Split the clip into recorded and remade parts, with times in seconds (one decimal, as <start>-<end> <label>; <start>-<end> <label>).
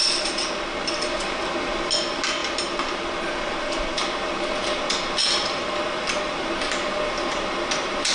0.0-8.1 recorded